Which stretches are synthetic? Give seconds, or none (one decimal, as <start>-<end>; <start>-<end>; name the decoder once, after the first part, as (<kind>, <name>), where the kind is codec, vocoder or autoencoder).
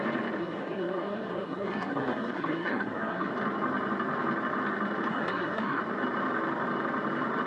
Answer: 0.4-3.3 (codec, SNAC); 5.1-5.8